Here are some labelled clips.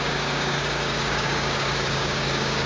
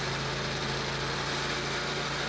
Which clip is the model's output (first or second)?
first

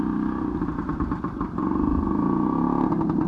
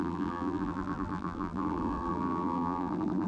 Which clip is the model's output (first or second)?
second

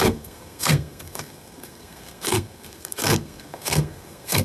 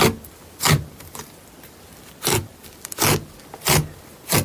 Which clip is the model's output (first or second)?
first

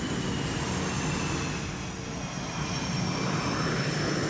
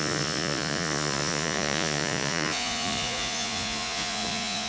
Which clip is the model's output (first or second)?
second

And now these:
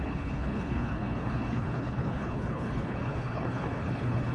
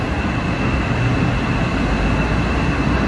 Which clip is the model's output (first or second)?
first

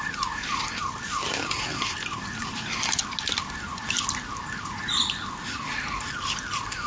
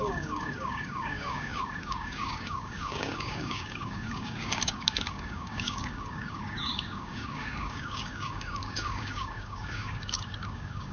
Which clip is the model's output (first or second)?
second